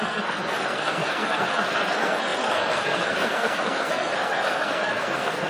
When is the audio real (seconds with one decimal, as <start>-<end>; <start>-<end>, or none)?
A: none